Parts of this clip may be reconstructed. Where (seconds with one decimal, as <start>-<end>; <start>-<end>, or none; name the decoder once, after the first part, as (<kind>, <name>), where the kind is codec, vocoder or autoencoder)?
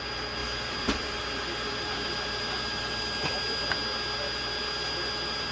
0.4-3.0 (vocoder, BigVGAN v2)